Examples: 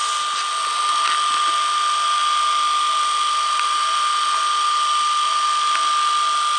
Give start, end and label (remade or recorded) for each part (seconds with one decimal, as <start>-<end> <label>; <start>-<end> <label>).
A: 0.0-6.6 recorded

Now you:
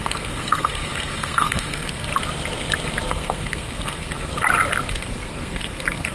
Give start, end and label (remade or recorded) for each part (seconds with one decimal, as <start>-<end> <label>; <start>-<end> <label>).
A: 0.0-2.1 remade; 2.1-3.1 recorded; 3.1-4.3 remade; 4.3-4.9 recorded; 4.9-6.1 remade

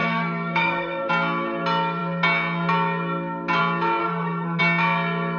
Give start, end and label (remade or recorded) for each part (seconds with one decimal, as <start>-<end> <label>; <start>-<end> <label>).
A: 0.0-1.1 remade; 1.1-4.0 recorded; 4.0-4.6 remade; 4.6-5.4 recorded

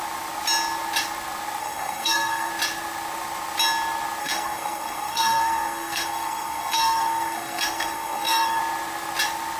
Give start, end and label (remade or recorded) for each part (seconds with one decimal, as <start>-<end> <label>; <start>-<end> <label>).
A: 0.0-1.6 recorded; 1.6-2.5 remade; 2.5-4.2 recorded; 4.2-8.6 remade; 8.6-9.6 recorded

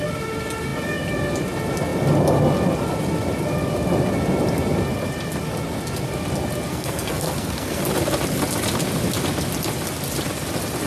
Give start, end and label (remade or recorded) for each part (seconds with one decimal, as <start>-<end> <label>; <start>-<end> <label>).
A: 0.0-6.7 recorded; 6.7-7.8 remade; 7.8-10.9 recorded

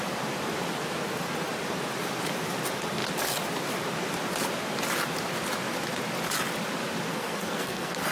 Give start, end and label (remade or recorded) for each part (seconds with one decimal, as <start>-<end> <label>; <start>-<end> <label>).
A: 0.0-7.1 recorded; 7.1-8.1 remade